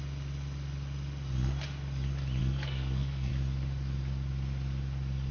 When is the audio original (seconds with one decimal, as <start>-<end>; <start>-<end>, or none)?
0.0-2.4; 3.3-5.3